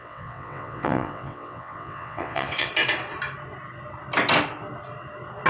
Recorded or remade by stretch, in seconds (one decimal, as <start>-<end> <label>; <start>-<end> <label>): 0.0-2.7 remade; 2.7-5.5 recorded